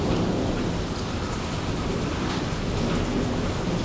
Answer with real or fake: real